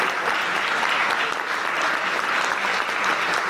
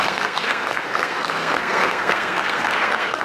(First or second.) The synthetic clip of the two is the second